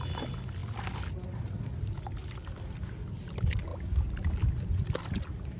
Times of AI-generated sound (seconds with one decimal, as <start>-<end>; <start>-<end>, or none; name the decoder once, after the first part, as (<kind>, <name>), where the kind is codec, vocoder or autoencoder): none